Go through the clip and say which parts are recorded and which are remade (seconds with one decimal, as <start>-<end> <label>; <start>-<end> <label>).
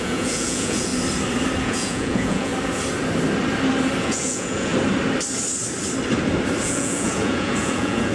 0.0-0.9 remade; 0.9-1.6 recorded; 1.6-2.5 remade; 2.5-4.0 recorded; 4.0-4.7 remade; 4.7-6.6 recorded; 6.6-8.1 remade